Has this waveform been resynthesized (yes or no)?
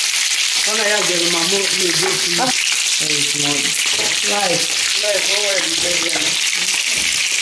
yes